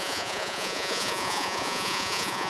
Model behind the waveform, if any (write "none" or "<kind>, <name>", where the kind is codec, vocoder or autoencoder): vocoder, Vocos